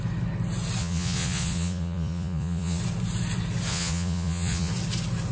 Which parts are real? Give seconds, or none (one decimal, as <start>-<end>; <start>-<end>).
0.0-0.8; 2.8-3.7; 4.7-5.3